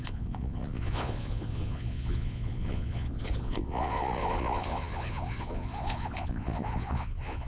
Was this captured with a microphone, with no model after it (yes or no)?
no